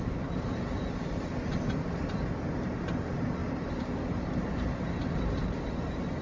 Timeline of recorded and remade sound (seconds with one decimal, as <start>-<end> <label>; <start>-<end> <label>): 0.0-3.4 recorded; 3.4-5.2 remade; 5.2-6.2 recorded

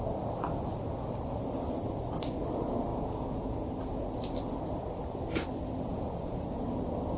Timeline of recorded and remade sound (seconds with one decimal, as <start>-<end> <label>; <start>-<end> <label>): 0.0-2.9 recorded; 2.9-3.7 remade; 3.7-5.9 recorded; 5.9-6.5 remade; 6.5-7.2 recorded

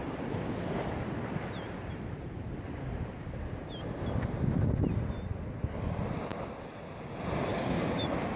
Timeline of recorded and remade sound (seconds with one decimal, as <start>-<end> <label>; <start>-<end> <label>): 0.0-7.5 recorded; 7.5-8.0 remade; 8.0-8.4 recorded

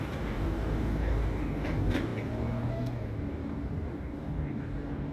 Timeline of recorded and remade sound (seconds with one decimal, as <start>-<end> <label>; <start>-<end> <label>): 0.0-5.1 remade